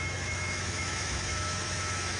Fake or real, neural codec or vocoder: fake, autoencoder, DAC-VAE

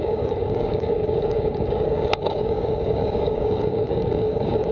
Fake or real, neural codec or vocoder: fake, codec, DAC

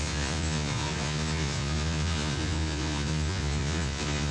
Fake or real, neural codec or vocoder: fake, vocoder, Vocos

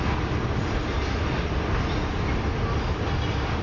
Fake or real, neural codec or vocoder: real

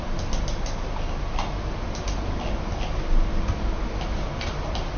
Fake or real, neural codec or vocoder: real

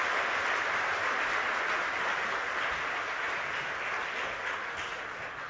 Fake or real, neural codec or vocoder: real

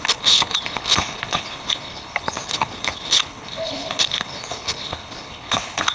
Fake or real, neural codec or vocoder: fake, codec, HILCodec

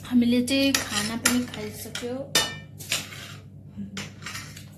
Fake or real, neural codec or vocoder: real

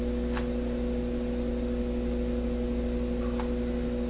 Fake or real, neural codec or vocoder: real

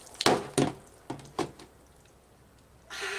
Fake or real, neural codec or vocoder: real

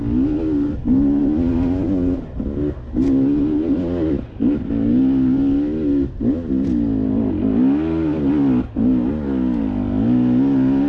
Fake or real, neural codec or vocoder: real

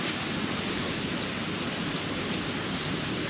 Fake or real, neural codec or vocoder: real